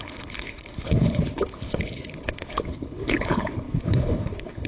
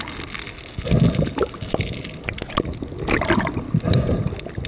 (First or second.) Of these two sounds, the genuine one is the second